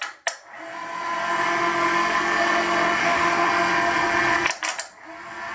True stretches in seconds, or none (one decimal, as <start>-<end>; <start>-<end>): 0.0-3.0; 3.5-5.5